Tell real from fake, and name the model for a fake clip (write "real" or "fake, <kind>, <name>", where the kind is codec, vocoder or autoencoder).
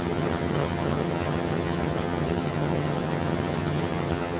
fake, vocoder, HiFi-GAN